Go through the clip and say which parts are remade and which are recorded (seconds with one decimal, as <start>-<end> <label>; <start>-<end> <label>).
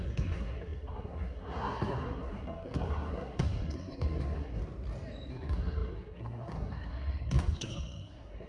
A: 0.0-4.6 remade; 4.6-5.3 recorded; 5.3-8.5 remade